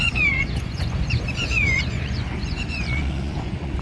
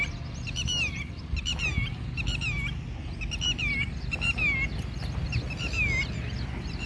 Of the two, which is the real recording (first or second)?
second